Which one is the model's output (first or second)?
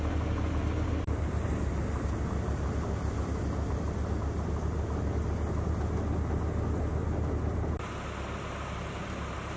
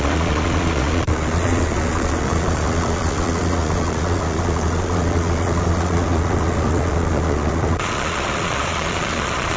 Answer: second